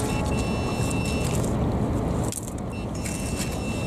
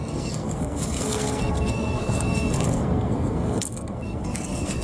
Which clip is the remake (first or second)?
second